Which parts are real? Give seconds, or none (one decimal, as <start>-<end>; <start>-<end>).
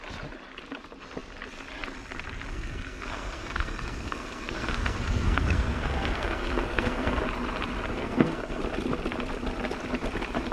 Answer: 0.0-2.5; 7.2-7.9; 8.6-10.5